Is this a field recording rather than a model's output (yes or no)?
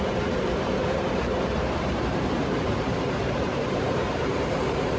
no